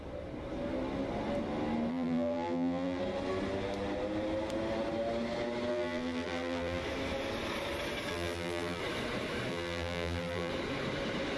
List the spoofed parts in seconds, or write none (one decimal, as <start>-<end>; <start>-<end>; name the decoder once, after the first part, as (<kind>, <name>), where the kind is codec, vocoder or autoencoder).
1.9-3.0 (vocoder, BigVGAN v2); 5.7-6.8; 8.1-8.8; 9.5-10.5